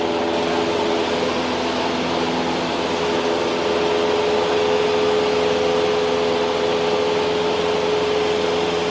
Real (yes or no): yes